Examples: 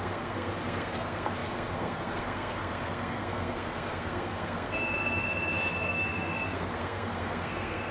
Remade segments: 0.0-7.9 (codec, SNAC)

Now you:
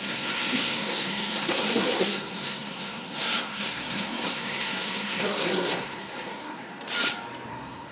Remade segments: 0.0-6.7 (codec, SNAC); 7.5-7.9

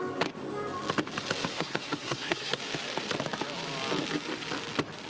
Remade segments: 1.5-2.6 (codec, SNAC)

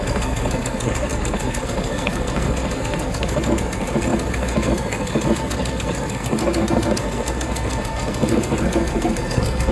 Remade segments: 0.0-9.7 (codec, SNAC)

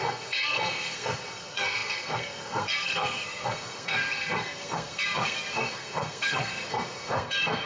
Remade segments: 0.0-7.7 (codec, SNAC)

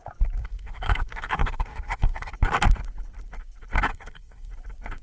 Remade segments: 0.4-2.3 (codec, SNAC); 3.9-4.5

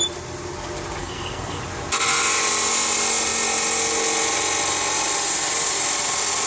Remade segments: 1.0-1.6 (codec, SNAC)

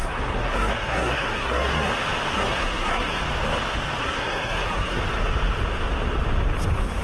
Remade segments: 0.0-1.9 (codec, SNAC); 2.3-3.2; 4.0-5.0